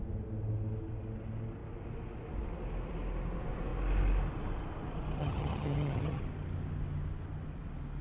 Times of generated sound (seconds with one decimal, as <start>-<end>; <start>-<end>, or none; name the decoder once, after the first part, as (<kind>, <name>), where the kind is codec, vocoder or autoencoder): 5.2-6.2 (vocoder, HiFi-GAN)